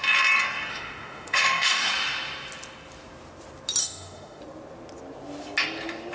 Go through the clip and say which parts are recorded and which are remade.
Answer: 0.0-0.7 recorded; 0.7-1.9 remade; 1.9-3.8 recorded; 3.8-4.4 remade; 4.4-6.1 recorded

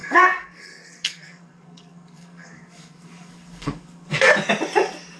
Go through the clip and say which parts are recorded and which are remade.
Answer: 0.0-4.3 remade; 4.3-5.2 recorded

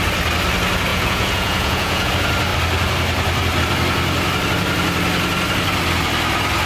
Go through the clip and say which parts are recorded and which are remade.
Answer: 0.0-0.9 recorded; 0.9-2.1 remade; 2.1-6.7 recorded